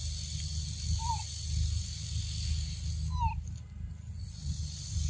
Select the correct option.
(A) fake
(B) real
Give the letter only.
B